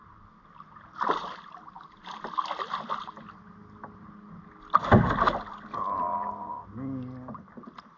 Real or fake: real